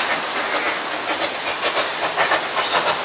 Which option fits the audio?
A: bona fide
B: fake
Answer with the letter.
A